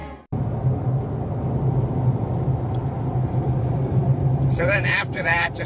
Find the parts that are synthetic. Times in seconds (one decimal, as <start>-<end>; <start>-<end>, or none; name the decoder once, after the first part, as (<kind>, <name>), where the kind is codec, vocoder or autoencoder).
3.2-5.7 (vocoder, BigVGAN v2)